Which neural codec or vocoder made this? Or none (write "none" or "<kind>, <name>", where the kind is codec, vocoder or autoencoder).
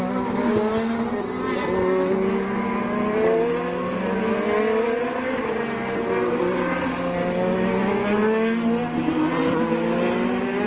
none